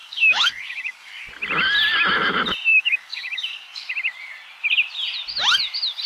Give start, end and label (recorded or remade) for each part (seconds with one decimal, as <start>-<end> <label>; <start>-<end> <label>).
0.0-1.3 remade; 1.3-2.7 recorded; 2.7-3.9 remade; 3.9-6.1 recorded